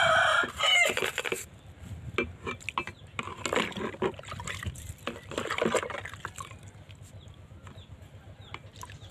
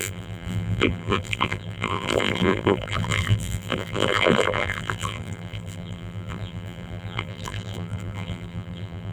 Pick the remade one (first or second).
second